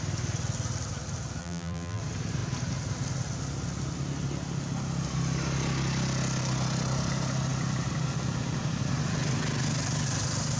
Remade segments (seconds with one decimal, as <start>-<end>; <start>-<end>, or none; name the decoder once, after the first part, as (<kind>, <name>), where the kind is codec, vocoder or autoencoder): 1.4-2.0 (vocoder, BigVGAN v2)